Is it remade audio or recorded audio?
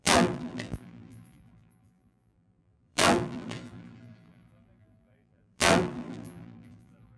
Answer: remade